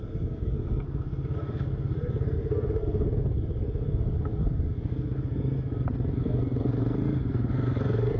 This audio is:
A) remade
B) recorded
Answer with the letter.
A